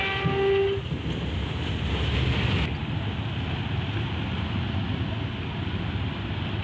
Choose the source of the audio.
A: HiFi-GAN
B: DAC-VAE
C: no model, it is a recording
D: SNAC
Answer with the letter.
C